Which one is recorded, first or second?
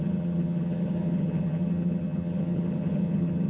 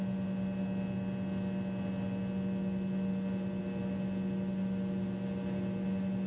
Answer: second